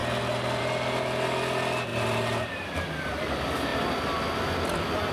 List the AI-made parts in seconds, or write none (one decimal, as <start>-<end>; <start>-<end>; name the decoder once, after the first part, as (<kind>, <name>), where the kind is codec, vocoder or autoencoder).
1.9-3.2 (vocoder, BigVGAN v2)